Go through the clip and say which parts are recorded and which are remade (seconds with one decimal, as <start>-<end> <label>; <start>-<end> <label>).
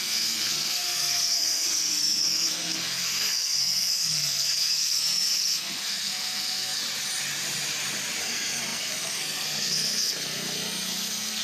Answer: 0.0-6.8 remade; 6.8-8.2 recorded; 8.2-11.4 remade